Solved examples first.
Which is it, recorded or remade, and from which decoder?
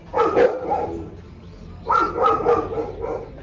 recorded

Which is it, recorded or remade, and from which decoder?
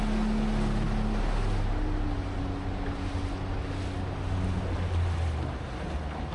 recorded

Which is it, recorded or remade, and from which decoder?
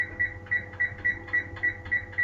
recorded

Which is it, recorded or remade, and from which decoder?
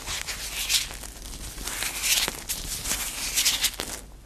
recorded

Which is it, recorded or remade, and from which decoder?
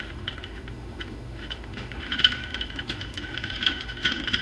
remade, autoencoder, DAC-VAE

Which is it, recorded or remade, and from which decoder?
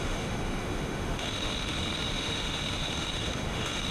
remade, autoencoder, DAC-VAE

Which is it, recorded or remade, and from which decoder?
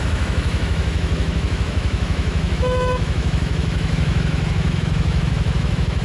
remade, autoencoder, DAC-VAE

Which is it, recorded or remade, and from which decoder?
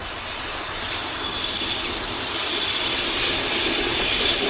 recorded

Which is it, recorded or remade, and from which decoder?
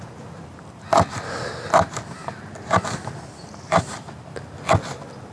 recorded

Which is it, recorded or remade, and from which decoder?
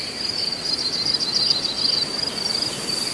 recorded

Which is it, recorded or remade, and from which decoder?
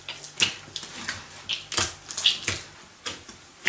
recorded